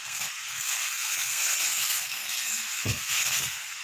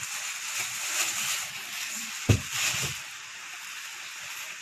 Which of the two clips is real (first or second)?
second